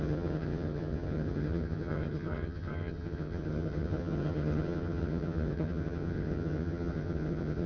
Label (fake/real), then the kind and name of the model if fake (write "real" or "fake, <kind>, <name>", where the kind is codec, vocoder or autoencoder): fake, vocoder, HiFi-GAN